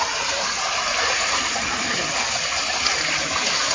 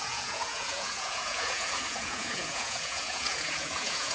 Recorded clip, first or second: first